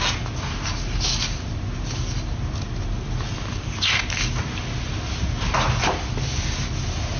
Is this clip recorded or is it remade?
recorded